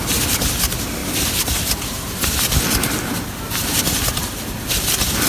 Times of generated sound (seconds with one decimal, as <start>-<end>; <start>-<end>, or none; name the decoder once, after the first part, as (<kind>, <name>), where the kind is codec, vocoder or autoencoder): none